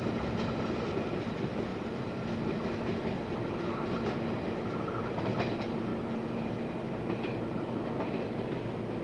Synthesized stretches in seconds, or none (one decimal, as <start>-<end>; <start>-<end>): none